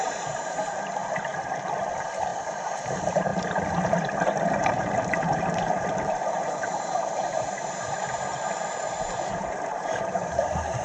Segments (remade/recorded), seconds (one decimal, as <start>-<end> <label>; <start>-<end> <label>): 0.0-1.3 remade; 1.3-1.9 recorded; 1.9-3.3 remade; 3.3-3.8 recorded; 3.8-10.8 remade